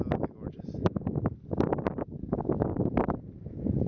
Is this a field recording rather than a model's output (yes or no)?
yes